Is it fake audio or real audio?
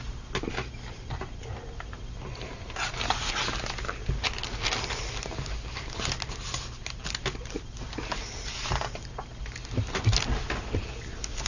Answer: real